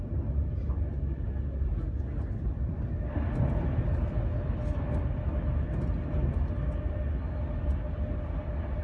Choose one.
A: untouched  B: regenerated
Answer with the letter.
A